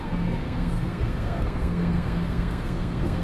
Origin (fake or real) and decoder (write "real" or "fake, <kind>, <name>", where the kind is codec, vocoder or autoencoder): fake, codec, SNAC